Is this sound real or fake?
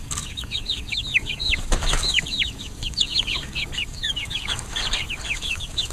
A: fake